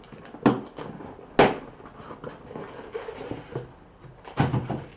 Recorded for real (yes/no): yes